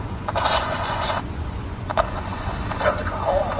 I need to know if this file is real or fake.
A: fake